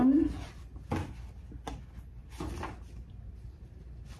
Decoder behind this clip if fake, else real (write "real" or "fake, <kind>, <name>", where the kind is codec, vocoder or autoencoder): real